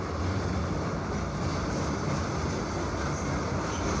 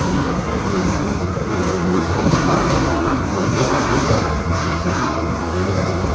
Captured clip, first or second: first